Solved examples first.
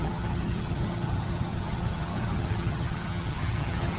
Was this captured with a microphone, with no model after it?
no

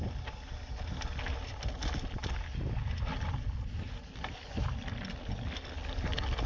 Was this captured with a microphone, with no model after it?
yes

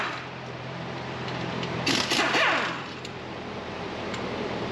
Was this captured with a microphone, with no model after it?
no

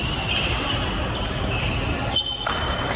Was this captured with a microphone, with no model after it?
yes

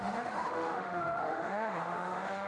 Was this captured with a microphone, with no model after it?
no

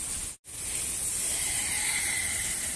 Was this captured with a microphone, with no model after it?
yes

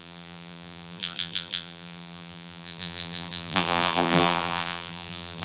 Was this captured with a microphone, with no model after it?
no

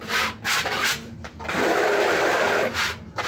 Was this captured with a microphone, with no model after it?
no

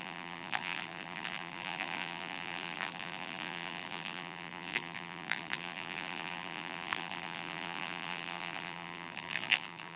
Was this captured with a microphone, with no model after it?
no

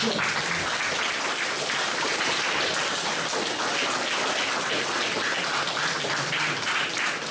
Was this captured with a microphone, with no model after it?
yes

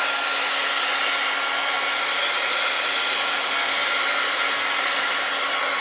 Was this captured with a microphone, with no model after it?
yes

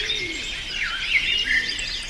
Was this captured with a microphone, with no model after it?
no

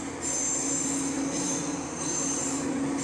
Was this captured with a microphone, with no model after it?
yes